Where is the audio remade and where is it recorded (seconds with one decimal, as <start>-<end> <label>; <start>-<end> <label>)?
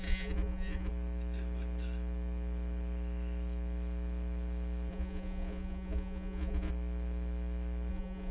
0.0-0.9 remade; 0.9-4.9 recorded; 4.9-6.7 remade; 6.7-7.9 recorded; 7.9-8.3 remade